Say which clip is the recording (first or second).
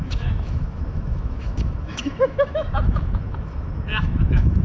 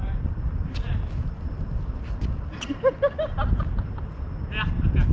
second